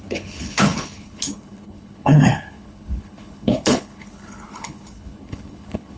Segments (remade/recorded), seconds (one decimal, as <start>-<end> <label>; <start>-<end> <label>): 0.0-6.0 remade